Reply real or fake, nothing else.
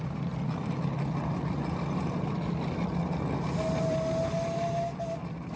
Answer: real